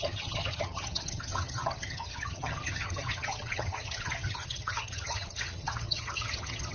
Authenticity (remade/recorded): remade